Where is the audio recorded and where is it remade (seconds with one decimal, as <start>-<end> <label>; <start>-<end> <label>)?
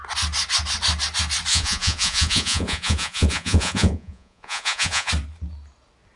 0.0-1.5 recorded; 1.5-5.1 remade; 5.1-6.2 recorded